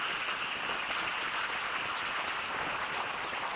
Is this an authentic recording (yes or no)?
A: yes